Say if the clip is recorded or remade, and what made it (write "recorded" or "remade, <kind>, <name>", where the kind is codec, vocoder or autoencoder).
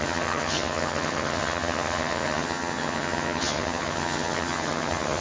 remade, vocoder, HiFi-GAN